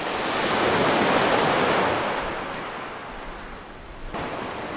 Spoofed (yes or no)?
no